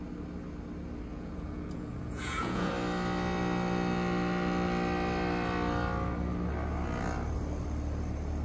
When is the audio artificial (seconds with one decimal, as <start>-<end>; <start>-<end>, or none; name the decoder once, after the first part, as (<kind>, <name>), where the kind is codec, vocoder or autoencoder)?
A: 1.1-2.7 (vocoder, Vocos)